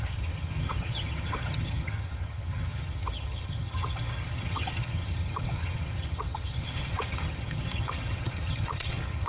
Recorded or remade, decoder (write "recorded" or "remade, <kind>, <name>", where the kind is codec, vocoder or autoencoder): remade, vocoder, HiFi-GAN